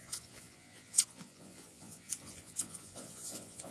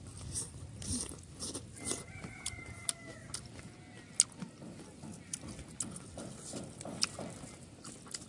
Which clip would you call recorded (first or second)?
second